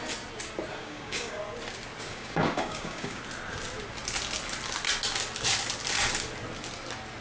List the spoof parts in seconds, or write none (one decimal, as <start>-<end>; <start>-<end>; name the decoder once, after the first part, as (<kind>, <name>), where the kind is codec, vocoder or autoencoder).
0.8-1.4 (codec, DAC); 2.1-3.2